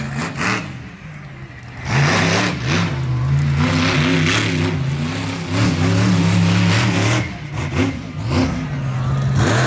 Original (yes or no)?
yes